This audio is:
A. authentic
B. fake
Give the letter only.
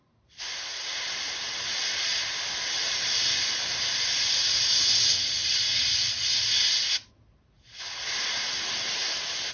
A